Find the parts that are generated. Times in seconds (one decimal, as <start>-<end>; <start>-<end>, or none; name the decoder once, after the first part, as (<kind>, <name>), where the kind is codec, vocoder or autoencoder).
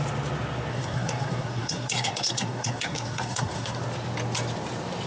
0.7-3.8 (codec, SNAC)